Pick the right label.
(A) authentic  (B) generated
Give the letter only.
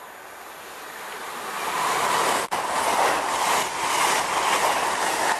A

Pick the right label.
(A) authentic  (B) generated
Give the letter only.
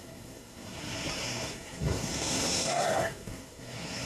B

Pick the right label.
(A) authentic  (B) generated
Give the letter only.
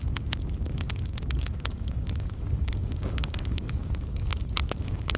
B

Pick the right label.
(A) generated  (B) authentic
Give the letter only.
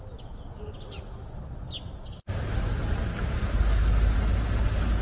B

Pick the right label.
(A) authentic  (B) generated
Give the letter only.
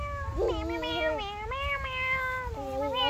A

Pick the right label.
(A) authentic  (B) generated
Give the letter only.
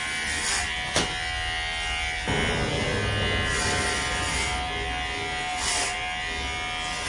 A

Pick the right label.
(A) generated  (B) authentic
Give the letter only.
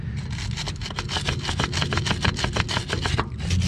B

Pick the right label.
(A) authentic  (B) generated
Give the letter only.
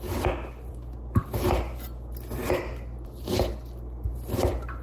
A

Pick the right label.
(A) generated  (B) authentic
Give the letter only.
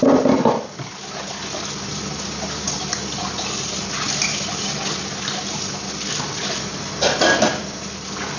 B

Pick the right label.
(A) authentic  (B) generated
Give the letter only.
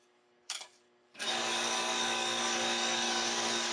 B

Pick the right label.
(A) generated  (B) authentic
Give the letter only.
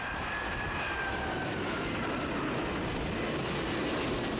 B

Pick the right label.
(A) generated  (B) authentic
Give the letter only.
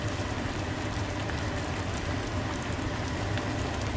A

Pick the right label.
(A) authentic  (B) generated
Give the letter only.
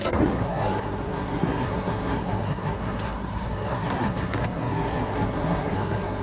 B